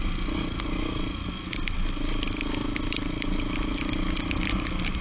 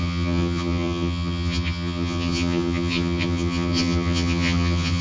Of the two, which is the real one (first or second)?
first